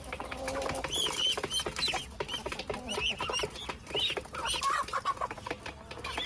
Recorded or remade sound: recorded